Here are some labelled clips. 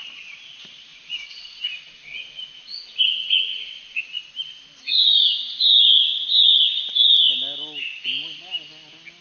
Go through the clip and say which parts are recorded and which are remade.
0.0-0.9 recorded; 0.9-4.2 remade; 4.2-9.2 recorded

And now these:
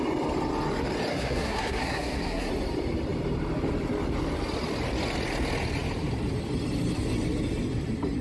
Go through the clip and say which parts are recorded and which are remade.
0.0-1.1 recorded; 1.1-2.5 remade; 2.5-8.2 recorded

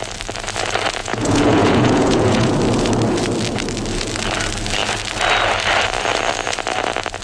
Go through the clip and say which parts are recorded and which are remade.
0.0-1.0 recorded; 1.0-2.6 remade; 2.6-7.2 recorded

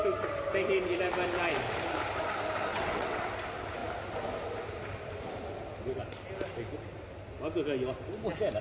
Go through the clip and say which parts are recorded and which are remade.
0.0-2.7 recorded; 2.7-3.3 remade; 3.3-8.6 recorded

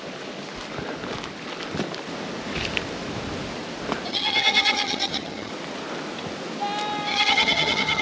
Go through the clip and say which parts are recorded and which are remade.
0.0-4.1 recorded; 4.1-5.5 remade; 5.5-7.1 recorded; 7.1-8.0 remade

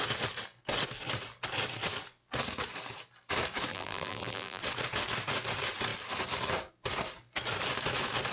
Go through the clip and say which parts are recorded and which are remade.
0.0-3.7 recorded; 3.7-4.6 remade; 4.6-8.3 recorded